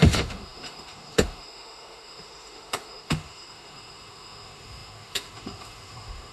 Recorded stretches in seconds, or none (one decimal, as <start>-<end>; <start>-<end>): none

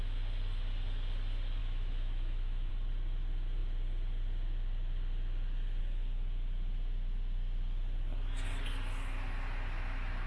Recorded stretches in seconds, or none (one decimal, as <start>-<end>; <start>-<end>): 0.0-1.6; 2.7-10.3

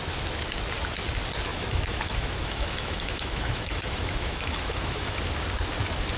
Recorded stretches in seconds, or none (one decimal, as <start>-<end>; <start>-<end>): 0.0-1.5; 5.2-6.2

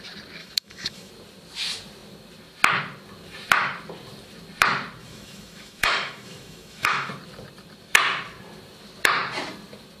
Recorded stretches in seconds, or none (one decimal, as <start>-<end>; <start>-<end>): 0.0-0.4; 1.1-5.0; 7.1-10.0